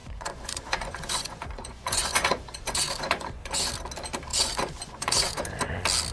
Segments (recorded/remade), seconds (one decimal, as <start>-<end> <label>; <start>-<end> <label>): 0.0-3.7 remade; 3.7-4.3 recorded; 4.3-5.4 remade; 5.4-6.1 recorded